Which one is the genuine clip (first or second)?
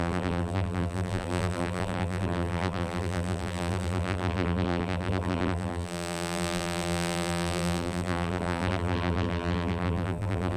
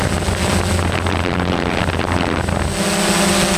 second